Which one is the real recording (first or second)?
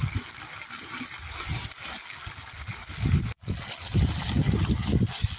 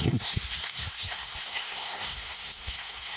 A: first